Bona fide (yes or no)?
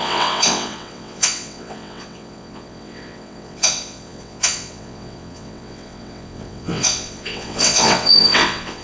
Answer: no